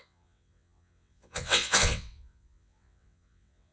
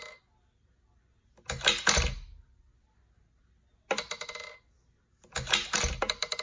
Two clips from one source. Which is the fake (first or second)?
first